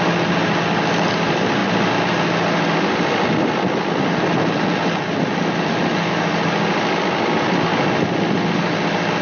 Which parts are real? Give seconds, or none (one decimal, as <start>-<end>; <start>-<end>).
0.0-9.2